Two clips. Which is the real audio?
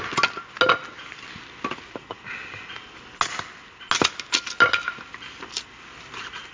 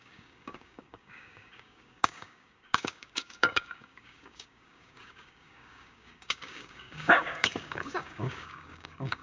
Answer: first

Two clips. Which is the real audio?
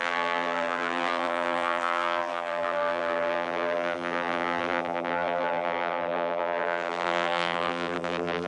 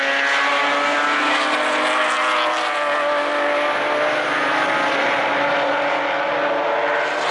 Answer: second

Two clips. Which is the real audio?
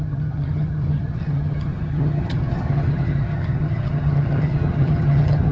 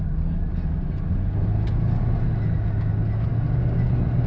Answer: second